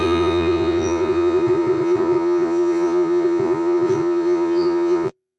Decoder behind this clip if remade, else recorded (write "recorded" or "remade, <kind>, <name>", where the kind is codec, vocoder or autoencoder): remade, vocoder, Vocos